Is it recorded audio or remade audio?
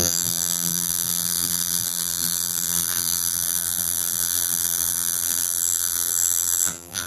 remade